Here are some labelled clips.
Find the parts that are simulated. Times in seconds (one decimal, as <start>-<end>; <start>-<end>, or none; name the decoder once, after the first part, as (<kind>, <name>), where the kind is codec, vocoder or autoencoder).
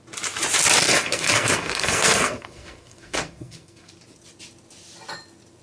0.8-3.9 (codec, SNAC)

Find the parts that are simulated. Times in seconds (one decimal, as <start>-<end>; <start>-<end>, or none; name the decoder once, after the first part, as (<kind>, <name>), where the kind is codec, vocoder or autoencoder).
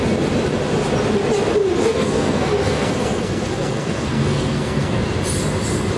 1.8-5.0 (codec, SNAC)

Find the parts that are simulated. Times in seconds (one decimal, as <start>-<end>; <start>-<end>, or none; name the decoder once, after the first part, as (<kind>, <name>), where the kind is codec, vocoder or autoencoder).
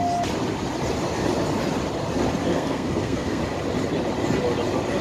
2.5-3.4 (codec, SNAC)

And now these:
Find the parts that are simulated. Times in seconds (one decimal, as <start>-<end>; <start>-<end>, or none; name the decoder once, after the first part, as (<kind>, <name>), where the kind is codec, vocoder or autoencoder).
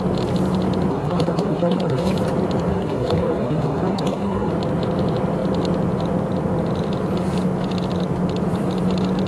0.9-2.1 (codec, SNAC); 2.7-4.5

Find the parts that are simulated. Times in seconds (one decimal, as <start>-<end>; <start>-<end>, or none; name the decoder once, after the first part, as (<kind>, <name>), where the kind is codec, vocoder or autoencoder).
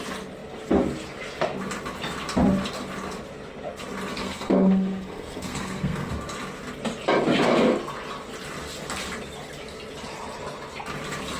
4.2-6.1 (codec, SNAC)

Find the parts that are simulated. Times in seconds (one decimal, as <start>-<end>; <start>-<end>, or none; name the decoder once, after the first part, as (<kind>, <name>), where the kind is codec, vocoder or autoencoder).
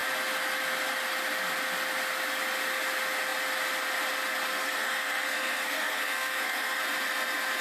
4.5-6.8 (codec, SNAC)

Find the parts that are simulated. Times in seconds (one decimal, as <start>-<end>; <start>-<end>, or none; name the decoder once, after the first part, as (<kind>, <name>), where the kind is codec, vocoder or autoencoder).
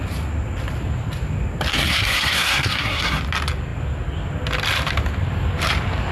1.7-3.2 (codec, SNAC)